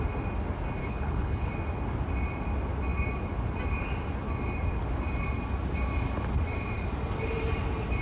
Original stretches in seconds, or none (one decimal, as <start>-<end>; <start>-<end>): 0.0-0.8; 1.5-8.0